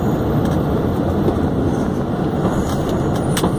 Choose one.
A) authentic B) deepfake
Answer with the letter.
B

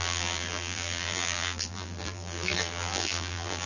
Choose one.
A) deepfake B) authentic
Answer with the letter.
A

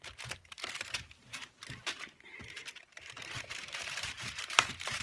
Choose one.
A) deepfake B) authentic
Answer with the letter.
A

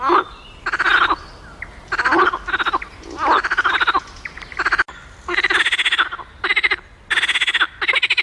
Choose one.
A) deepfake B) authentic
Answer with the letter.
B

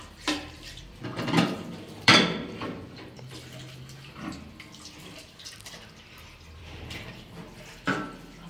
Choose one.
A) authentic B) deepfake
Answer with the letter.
B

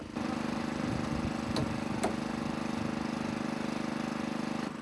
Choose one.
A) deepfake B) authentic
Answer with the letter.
B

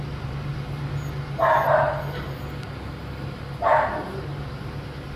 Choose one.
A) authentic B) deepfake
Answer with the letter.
A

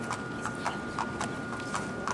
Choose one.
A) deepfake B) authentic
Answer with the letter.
B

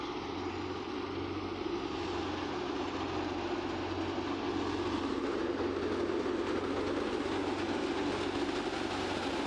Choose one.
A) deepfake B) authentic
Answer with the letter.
B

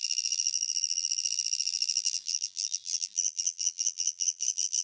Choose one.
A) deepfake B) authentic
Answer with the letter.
A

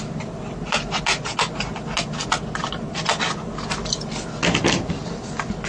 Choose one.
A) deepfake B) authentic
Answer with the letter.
B